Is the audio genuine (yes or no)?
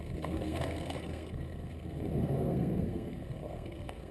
no